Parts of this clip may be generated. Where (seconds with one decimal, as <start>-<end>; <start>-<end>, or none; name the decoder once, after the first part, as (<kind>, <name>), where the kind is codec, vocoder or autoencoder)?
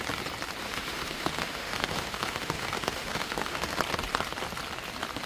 0.6-3.8 (autoencoder, DAC-VAE)